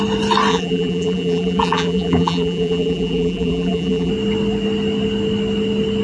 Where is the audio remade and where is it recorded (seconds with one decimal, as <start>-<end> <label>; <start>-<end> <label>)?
0.0-0.5 recorded; 0.5-4.1 remade; 4.1-6.0 recorded